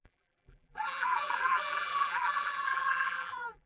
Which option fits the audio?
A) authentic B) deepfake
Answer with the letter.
B